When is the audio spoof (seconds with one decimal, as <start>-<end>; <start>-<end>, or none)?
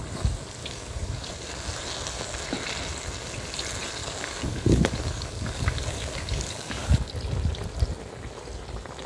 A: 0.6-1.3; 4.0-7.1